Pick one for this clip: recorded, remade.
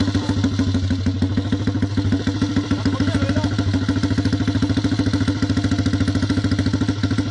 recorded